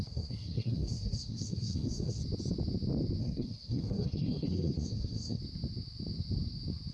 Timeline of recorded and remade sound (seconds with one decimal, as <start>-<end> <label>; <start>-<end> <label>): 0.0-2.2 remade; 2.2-3.2 recorded; 3.2-5.4 remade; 5.4-6.9 recorded